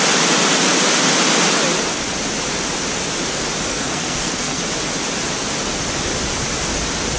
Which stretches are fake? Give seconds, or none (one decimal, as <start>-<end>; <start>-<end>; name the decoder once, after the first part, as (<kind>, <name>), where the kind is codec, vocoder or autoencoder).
3.7-4.6 (codec, SNAC)